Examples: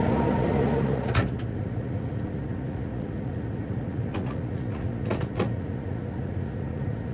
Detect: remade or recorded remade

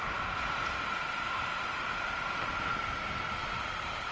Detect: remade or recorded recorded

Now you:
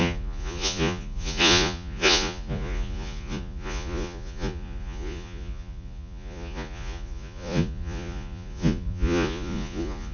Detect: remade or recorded remade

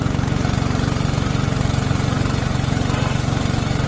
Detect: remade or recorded remade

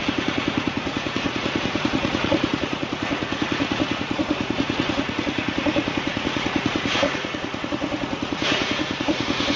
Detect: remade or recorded remade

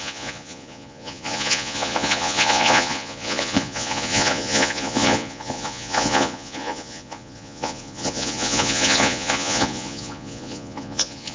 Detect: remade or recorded remade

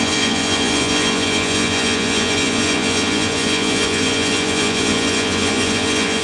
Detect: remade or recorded remade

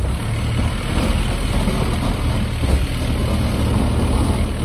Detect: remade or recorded recorded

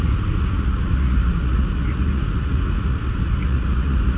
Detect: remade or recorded remade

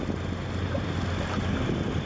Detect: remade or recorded recorded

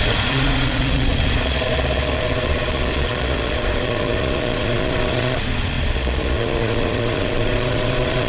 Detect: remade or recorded remade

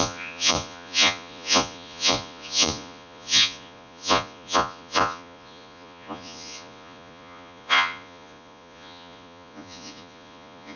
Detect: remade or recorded remade